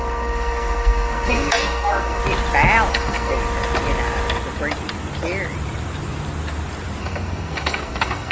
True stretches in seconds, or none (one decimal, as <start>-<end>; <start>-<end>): 2.2-2.9; 3.4-7.0